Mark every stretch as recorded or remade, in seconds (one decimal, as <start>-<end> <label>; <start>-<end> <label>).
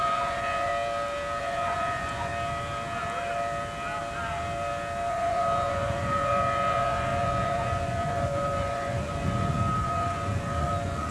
0.0-0.7 remade; 0.7-1.4 recorded; 1.4-2.3 remade; 2.3-5.1 recorded; 5.1-11.1 remade